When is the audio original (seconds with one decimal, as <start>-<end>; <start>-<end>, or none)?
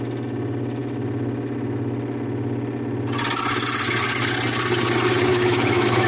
0.0-5.3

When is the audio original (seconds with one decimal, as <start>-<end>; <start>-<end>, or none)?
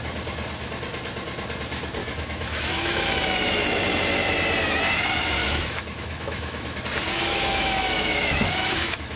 0.0-2.0; 3.1-5.4; 6.8-7.3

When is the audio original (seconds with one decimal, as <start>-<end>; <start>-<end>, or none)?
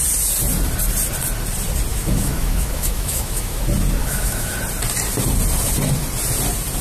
0.0-1.9; 3.6-4.0; 4.5-6.8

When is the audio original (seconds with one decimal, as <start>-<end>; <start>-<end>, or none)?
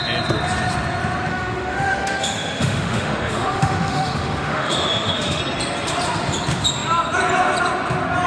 0.0-1.3; 5.4-8.3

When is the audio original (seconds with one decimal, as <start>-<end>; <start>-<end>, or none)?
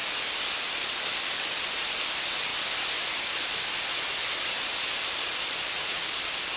0.0-6.6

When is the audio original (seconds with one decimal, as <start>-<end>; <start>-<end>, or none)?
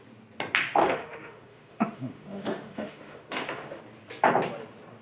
0.0-0.8; 3.8-5.0